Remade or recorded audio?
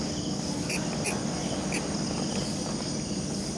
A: recorded